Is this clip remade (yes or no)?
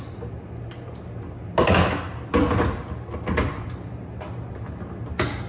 no